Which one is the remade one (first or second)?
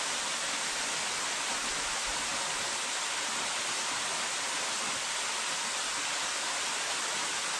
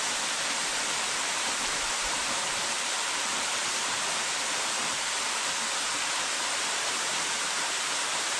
second